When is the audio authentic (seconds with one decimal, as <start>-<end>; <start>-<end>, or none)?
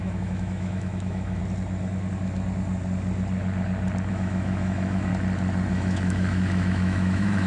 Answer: 1.4-4.1; 5.1-5.7